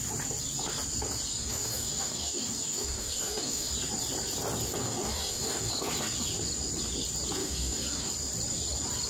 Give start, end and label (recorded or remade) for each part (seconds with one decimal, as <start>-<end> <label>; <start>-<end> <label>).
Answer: 0.0-1.3 recorded; 1.3-3.7 remade; 3.7-4.8 recorded; 4.8-5.7 remade; 5.7-7.4 recorded; 7.4-8.1 remade; 8.1-9.1 recorded